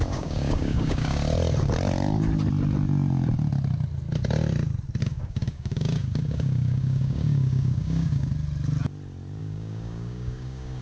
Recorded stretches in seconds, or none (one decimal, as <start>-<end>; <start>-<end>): 1.2-5.0; 8.3-9.4